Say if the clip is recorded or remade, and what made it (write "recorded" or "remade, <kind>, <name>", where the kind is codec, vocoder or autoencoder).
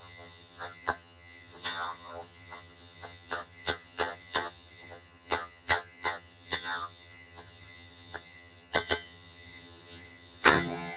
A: remade, vocoder, HiFi-GAN